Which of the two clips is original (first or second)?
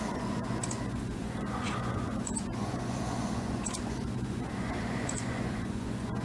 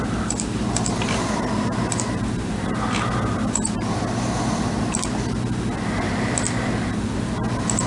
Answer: second